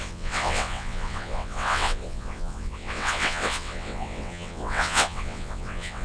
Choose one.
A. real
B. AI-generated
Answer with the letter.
B